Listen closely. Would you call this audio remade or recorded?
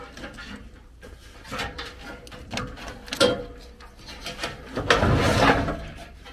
recorded